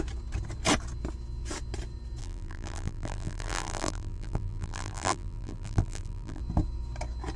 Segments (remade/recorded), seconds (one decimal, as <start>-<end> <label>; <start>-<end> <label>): 0.0-2.2 recorded; 2.2-6.4 remade; 6.4-7.4 recorded